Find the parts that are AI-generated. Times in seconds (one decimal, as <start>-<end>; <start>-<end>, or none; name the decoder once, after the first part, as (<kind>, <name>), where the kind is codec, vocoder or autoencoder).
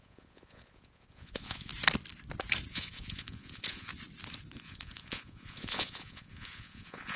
0.0-1.7 (vocoder, Vocos); 2.7-3.9; 4.6-7.2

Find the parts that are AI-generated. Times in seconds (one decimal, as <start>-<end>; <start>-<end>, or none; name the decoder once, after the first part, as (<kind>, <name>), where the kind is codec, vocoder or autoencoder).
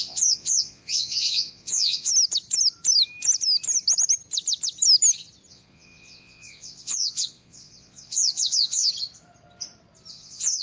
0.0-2.1 (vocoder, Vocos); 5.5-8.9; 10.1-10.6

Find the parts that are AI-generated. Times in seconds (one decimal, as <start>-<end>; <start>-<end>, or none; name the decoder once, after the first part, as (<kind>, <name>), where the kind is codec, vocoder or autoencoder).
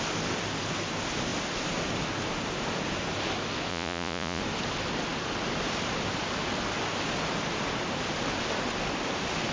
3.7-4.4 (vocoder, Vocos)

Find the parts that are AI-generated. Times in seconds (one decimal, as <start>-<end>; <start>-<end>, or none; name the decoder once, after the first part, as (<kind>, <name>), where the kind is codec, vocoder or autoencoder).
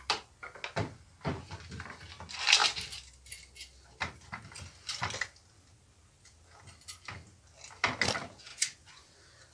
8.5-9.1 (vocoder, Vocos)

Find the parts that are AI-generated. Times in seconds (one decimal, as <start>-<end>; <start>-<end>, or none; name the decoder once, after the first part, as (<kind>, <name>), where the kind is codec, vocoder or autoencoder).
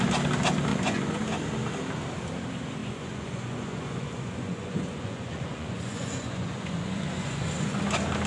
0.7-1.2 (vocoder, Vocos); 2.8-7.8